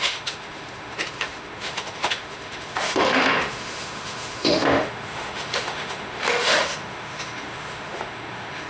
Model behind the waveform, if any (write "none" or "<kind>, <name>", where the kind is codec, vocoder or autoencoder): autoencoder, DAC-VAE